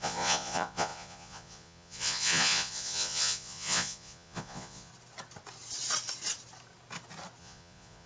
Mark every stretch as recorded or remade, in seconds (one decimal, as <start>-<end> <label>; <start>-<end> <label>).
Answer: 0.0-4.9 remade; 4.9-7.4 recorded; 7.4-8.1 remade